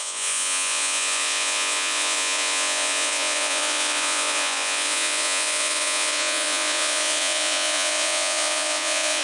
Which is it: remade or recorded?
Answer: remade